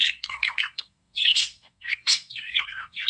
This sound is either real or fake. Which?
fake